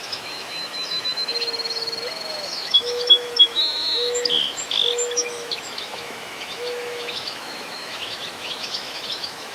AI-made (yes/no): yes